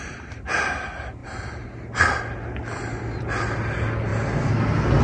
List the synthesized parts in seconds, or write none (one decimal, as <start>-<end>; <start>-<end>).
none